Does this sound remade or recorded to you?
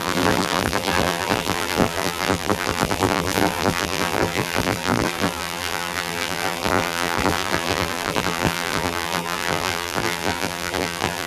remade